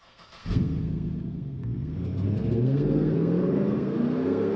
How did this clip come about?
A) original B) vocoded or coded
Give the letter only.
B